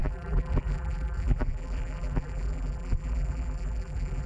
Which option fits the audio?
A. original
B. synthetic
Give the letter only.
B